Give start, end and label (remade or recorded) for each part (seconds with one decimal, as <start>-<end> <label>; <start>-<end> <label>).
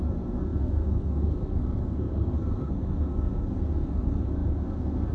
0.0-5.1 remade